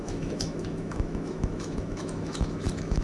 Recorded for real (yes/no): no